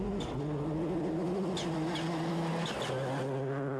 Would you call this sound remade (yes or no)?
no